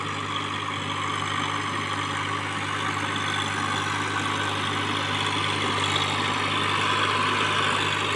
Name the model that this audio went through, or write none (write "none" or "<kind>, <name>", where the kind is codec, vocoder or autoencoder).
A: none